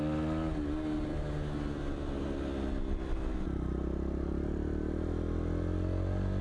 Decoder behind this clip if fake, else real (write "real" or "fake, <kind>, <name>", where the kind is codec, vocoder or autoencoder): real